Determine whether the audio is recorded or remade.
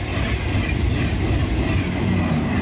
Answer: recorded